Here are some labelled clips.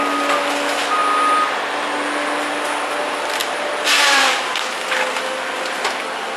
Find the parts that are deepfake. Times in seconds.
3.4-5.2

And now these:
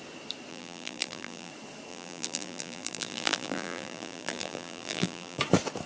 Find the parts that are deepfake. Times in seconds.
0.5-1.5; 1.9-5.4

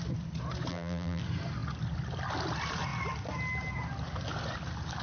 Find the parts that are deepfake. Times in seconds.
0.7-1.2

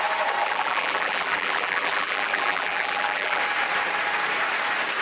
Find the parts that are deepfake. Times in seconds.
0.4-3.4

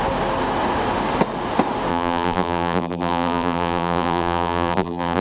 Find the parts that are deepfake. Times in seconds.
1.9-5.2

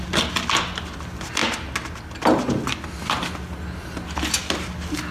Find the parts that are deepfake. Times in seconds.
none